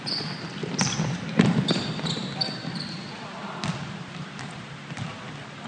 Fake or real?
real